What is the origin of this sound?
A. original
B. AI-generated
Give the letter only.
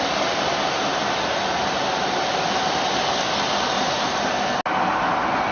A